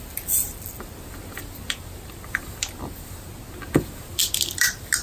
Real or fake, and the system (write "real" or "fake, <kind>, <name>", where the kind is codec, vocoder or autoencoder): real